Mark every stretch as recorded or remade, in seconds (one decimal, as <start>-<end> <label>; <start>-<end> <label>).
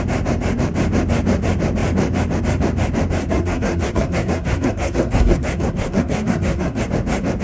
0.0-3.2 recorded; 3.2-6.8 remade; 6.8-7.4 recorded